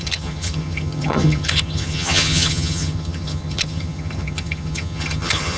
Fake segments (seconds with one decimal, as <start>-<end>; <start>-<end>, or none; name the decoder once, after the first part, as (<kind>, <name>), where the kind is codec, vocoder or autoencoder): 0.0-5.6 (vocoder, HiFi-GAN)